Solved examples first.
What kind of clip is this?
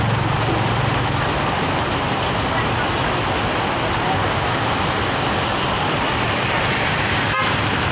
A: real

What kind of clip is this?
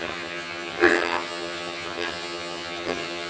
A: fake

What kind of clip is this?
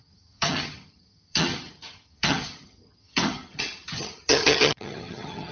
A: fake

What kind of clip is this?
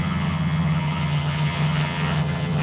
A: fake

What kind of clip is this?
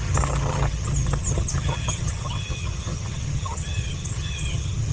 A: fake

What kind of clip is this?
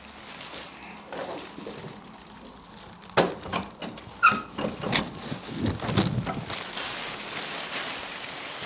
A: real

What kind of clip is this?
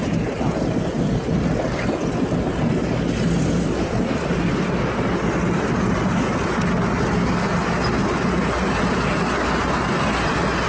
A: real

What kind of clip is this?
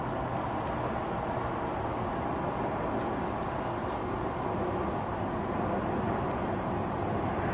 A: real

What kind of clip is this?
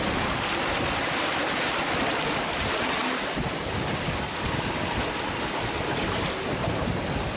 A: real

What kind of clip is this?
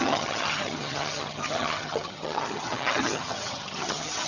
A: fake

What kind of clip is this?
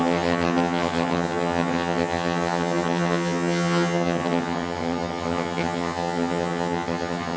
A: fake